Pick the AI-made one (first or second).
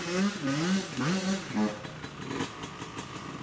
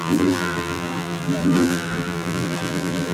second